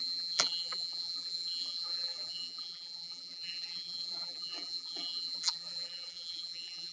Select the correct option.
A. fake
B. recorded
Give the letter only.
A